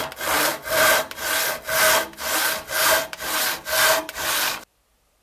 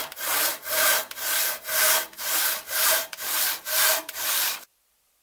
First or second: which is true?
first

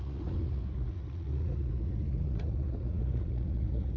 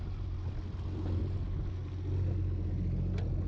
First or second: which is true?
second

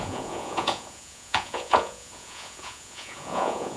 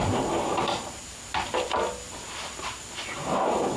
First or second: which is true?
second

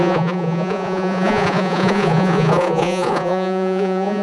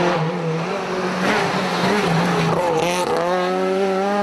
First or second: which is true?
second